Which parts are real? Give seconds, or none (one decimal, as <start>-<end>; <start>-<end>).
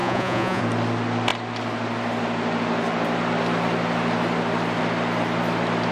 0.6-5.9